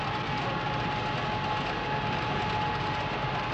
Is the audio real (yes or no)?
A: yes